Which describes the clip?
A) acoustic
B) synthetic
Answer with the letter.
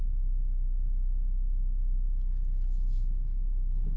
A